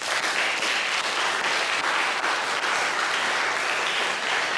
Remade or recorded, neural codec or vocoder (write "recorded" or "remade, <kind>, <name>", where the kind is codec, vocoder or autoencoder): recorded